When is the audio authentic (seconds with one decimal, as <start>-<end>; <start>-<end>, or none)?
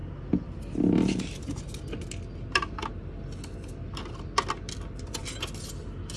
0.0-6.2